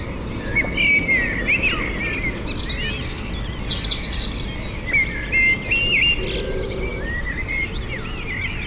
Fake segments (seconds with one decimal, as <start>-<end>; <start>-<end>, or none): 6.9-7.7